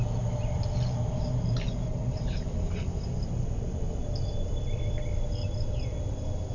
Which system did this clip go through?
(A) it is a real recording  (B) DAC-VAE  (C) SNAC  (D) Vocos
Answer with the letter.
A